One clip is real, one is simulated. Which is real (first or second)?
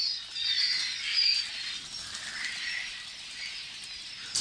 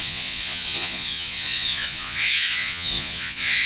first